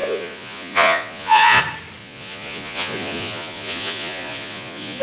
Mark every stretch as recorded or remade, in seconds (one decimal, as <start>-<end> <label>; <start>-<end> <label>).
0.0-1.6 remade; 1.6-2.0 recorded; 2.0-5.0 remade